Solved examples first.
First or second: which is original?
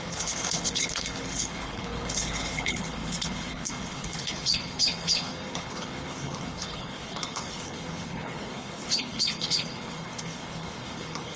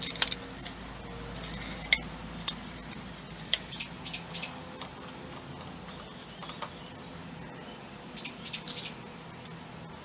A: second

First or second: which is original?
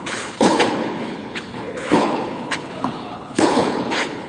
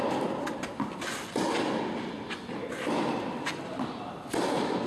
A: second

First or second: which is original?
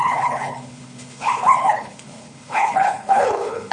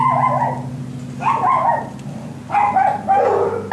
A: second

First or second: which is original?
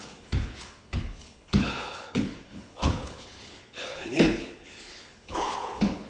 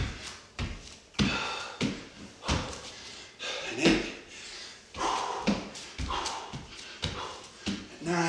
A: second